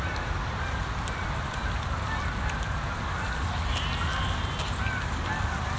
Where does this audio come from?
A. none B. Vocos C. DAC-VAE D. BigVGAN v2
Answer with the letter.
A